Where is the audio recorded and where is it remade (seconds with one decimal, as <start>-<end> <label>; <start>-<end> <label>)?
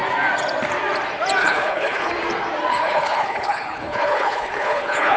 0.0-1.4 recorded; 1.4-2.1 remade; 2.1-2.7 recorded; 2.7-5.2 remade